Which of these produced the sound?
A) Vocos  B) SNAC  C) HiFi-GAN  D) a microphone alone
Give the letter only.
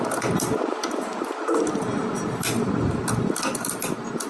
D